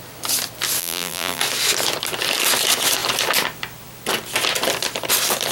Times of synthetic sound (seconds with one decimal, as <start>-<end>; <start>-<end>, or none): 0.8-1.4